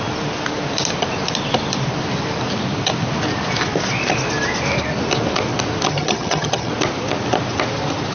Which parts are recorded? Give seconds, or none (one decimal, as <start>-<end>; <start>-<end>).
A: 0.0-5.9; 6.7-8.1